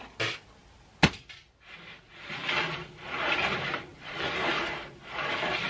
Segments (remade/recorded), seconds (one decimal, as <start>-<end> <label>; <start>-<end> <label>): 0.0-3.9 recorded; 3.9-4.5 remade; 4.5-5.7 recorded